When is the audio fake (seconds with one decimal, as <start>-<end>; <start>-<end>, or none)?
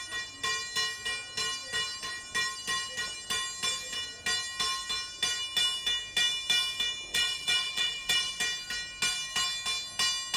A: 7.1-8.4